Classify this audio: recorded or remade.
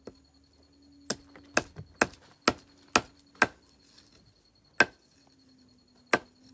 recorded